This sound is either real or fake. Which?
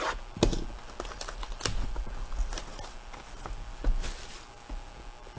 real